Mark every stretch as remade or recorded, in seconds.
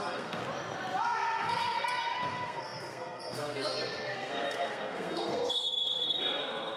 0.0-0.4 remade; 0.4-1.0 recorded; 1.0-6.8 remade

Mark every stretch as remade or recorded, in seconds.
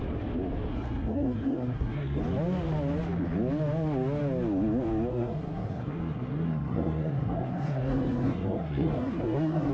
0.0-0.7 recorded; 0.7-2.2 remade; 2.2-5.1 recorded; 5.1-9.7 remade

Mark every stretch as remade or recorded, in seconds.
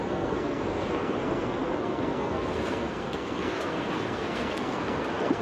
0.0-5.4 remade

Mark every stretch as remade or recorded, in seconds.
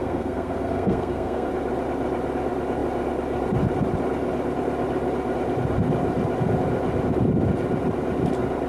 0.0-1.5 remade; 1.5-8.7 recorded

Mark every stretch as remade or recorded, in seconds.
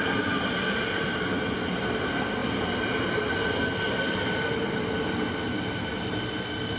0.0-6.8 recorded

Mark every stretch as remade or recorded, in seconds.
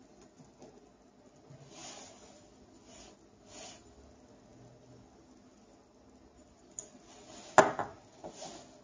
0.0-8.8 recorded